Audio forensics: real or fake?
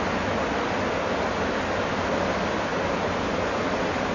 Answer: real